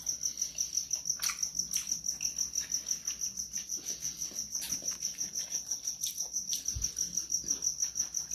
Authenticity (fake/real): real